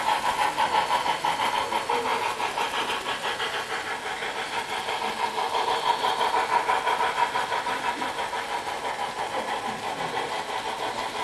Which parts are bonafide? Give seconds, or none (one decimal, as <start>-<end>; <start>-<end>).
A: 0.0-11.2